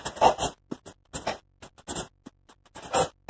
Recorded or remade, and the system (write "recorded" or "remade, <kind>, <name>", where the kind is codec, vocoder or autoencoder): recorded